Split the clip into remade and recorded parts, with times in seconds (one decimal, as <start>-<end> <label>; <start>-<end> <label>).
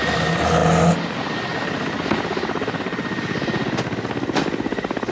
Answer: 0.0-5.1 recorded